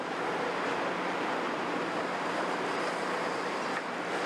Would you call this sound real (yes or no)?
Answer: yes